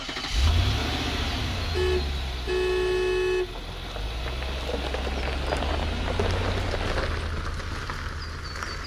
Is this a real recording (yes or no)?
yes